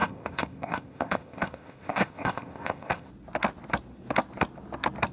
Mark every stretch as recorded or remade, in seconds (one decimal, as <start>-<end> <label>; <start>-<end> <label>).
0.0-3.1 remade; 3.1-5.1 recorded